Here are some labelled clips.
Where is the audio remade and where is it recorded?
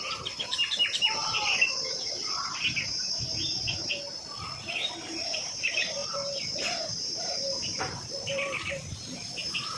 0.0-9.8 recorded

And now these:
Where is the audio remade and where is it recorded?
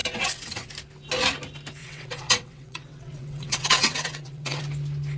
0.0-0.7 remade; 0.7-1.8 recorded; 1.8-4.6 remade; 4.6-5.2 recorded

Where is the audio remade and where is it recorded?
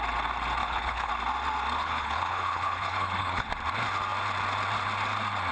0.0-0.6 recorded; 0.6-1.1 remade; 1.1-1.8 recorded; 1.8-3.5 remade; 3.5-5.5 recorded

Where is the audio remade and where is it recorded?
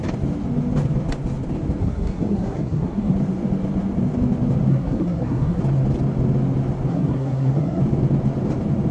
0.0-1.8 recorded; 1.8-3.1 remade; 3.1-4.7 recorded; 4.7-5.6 remade; 5.6-6.9 recorded; 6.9-7.8 remade; 7.8-8.9 recorded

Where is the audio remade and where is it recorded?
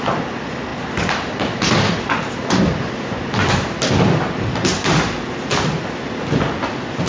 0.0-7.1 recorded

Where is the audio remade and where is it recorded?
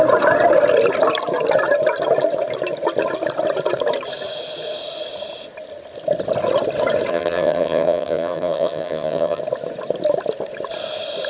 0.0-7.1 recorded; 7.1-9.4 remade; 9.4-11.3 recorded